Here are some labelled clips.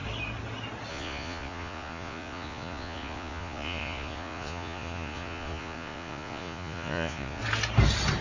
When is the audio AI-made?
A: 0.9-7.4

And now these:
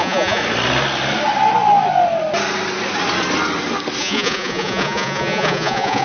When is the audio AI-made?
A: 0.0-0.4; 4.0-6.0

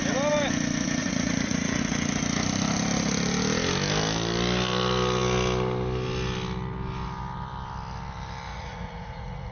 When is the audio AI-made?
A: 1.0-1.8; 8.5-9.5

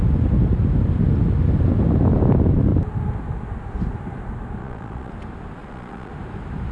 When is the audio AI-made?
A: 4.6-5.1; 5.6-6.1

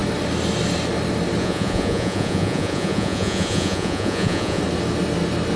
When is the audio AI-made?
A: 1.4-4.6

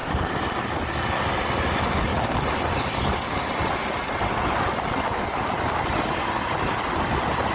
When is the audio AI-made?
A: none

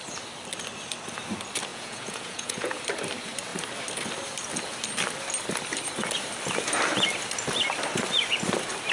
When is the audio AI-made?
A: 1.7-2.8